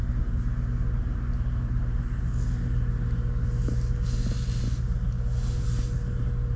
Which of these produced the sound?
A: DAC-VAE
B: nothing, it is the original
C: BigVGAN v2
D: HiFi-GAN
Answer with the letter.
B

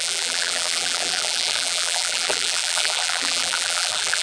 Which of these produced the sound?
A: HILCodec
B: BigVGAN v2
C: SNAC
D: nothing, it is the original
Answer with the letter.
B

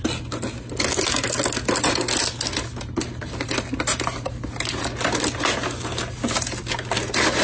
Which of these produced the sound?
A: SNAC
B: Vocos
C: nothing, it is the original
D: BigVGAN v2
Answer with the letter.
C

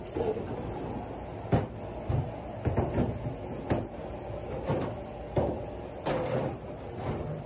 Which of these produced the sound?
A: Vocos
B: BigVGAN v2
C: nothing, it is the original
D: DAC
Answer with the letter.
C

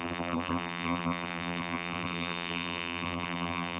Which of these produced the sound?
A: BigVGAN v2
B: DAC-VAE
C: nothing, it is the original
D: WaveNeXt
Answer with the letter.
A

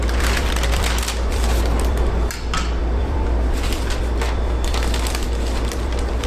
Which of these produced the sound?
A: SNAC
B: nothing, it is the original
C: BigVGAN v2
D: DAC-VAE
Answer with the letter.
C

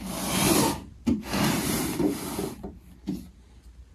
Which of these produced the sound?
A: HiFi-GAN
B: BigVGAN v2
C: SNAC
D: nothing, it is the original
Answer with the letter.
B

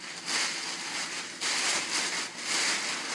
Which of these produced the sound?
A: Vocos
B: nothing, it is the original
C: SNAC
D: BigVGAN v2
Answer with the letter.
D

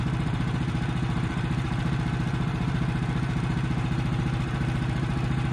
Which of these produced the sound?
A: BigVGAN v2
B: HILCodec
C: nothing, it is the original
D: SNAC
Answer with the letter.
A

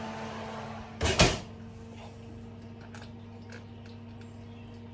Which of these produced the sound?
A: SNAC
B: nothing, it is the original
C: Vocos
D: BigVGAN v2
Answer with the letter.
B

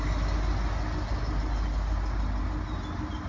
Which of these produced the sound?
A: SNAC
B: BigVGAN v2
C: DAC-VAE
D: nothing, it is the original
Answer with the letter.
D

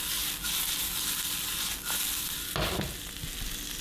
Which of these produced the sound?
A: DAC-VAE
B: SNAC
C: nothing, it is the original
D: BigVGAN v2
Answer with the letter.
C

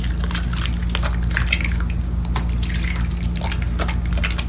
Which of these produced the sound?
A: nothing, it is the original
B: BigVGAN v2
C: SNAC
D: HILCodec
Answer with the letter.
A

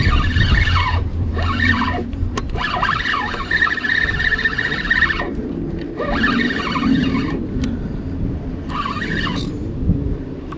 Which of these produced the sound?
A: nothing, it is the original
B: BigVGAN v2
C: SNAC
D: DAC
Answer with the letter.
B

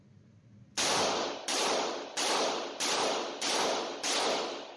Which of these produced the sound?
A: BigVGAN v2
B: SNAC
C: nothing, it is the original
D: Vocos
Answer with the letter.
C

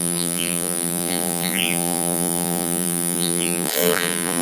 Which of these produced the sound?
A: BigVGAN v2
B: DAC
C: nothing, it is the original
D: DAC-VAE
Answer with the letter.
A